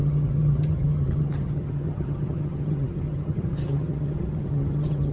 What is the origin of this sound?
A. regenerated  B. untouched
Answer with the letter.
A